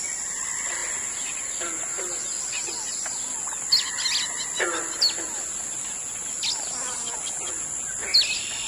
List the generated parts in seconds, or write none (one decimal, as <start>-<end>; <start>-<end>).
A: none